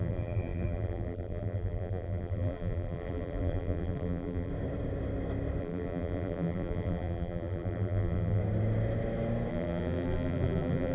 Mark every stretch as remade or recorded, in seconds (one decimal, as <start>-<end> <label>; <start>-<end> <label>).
0.0-4.5 remade; 4.5-5.6 recorded; 5.6-8.4 remade; 8.4-9.5 recorded; 9.5-10.9 remade